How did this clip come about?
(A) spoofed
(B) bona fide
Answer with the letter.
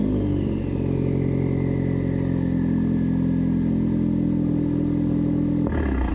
B